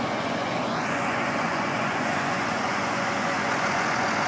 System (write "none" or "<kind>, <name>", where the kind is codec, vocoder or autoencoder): vocoder, Vocos